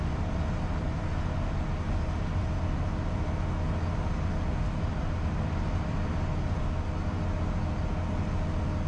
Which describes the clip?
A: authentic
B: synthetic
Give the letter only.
A